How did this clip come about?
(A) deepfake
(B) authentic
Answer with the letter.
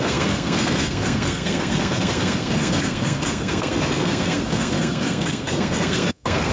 A